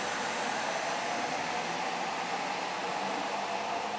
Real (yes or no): yes